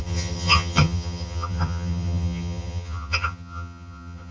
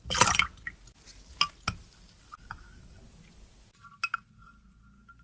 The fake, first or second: first